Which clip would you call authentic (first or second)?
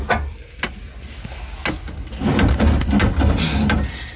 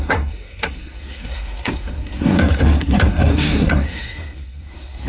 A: first